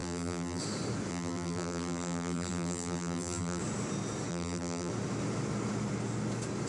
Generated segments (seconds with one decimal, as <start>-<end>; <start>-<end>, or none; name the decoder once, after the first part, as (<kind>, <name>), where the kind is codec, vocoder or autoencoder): 0.0-0.6 (vocoder, BigVGAN v2); 1.1-3.6; 4.3-4.9